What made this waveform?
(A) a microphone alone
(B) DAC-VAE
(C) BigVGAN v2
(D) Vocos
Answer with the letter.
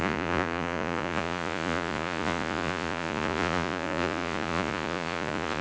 D